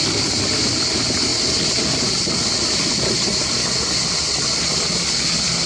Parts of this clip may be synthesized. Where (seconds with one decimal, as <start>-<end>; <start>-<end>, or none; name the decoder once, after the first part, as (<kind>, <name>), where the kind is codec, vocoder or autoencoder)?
none